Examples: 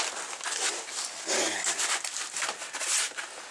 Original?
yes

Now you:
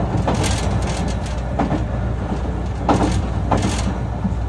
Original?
yes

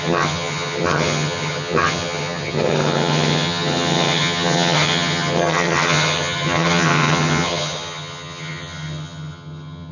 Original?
no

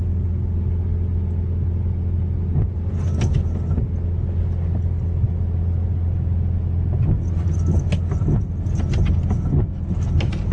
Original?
yes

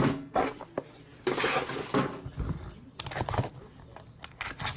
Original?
yes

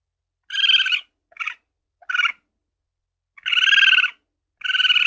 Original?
yes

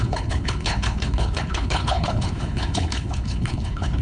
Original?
no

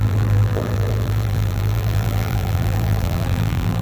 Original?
no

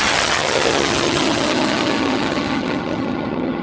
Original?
no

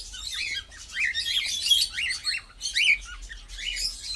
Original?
yes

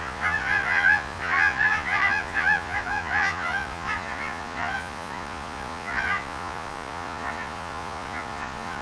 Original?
no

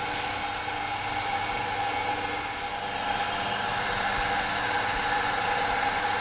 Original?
yes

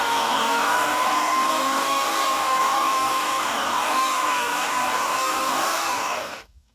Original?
no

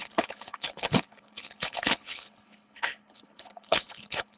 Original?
no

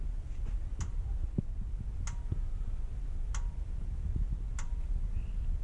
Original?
yes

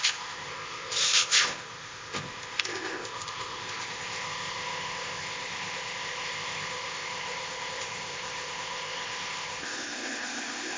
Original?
no